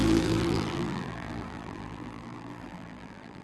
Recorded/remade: remade